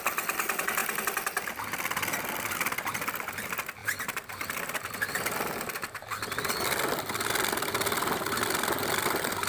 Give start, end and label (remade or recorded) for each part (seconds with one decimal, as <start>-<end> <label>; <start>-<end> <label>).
0.0-9.5 recorded